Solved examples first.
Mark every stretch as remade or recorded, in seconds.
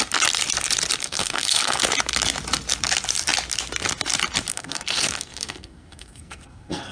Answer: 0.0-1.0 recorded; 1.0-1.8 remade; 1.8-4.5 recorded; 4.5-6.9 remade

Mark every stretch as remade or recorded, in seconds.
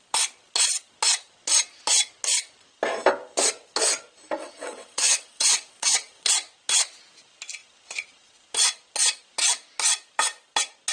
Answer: 0.0-4.4 recorded; 4.4-6.3 remade; 6.3-10.9 recorded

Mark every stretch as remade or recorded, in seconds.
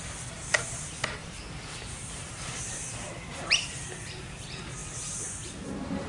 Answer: 0.0-1.2 recorded; 1.2-2.6 remade; 2.6-6.1 recorded